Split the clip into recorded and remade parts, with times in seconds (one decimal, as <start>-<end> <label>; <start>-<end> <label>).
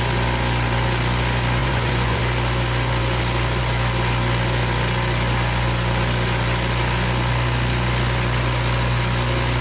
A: 0.0-1.6 recorded; 1.6-2.2 remade; 2.2-9.6 recorded